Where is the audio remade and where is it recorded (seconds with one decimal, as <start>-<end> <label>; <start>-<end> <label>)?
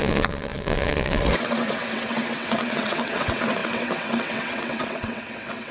0.0-5.7 remade